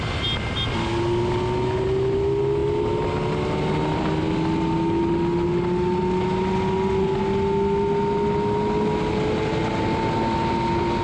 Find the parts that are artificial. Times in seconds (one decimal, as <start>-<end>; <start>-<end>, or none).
none